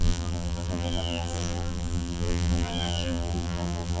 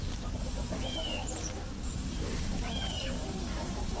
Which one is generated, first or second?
first